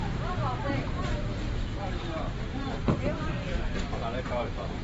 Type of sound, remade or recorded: remade